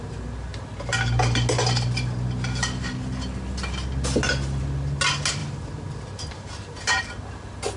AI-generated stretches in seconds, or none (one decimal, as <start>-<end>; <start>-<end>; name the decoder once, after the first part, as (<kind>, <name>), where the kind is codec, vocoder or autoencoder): none